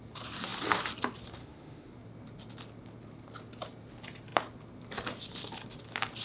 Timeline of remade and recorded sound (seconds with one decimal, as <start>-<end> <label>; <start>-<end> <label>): 0.0-1.4 recorded; 1.4-1.9 remade; 1.9-6.2 recorded